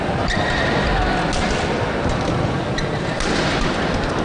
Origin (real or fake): real